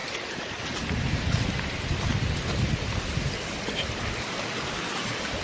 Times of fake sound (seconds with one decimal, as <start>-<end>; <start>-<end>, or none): none